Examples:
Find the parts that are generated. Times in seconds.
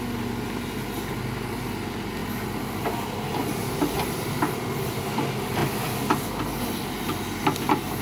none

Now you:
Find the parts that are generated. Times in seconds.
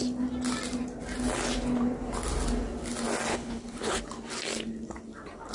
3.3-4.0 (codec, HILCodec)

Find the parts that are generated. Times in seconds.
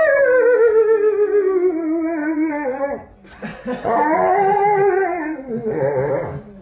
2.2-2.8 (vocoder, Vocos); 3.5-6.1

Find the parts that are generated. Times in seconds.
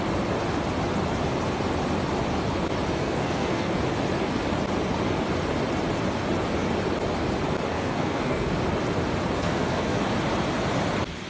3.0-3.8 (codec, SNAC); 7.7-8.5; 9.4-10.0